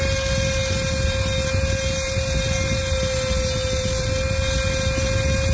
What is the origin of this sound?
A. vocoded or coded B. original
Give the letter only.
B